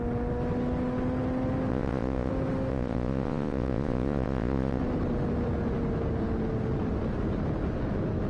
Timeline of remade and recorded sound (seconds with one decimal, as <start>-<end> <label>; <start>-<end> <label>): 0.0-1.7 recorded; 1.7-2.3 remade; 2.3-2.7 recorded; 2.7-4.8 remade; 4.8-8.3 recorded

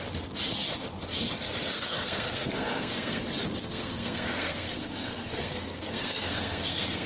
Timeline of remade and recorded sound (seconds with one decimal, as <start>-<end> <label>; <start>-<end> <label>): 0.0-1.7 recorded; 1.7-3.2 remade; 3.2-3.6 recorded; 3.6-7.1 remade

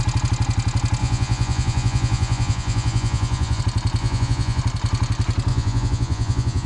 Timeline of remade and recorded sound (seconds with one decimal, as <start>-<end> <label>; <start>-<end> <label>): 0.0-1.0 recorded; 1.0-3.6 remade; 3.6-4.0 recorded; 4.0-4.6 remade; 4.6-5.5 recorded; 5.5-6.7 remade

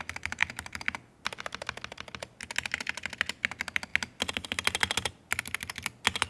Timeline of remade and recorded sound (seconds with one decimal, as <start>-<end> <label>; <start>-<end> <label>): 0.0-6.3 recorded

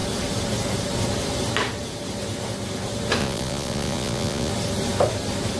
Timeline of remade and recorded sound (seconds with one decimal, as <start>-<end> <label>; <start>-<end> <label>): 0.0-3.2 recorded; 3.2-4.5 remade; 4.5-5.6 recorded

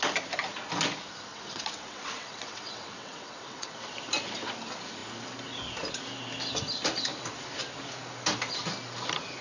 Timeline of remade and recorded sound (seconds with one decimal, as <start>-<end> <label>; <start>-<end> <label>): 0.0-1.3 recorded; 1.3-3.7 remade; 3.7-9.4 recorded